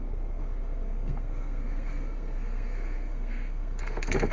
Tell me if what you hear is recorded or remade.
remade